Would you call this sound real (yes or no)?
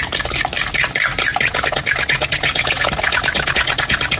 yes